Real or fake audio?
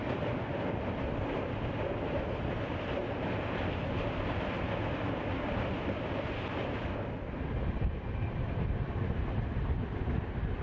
real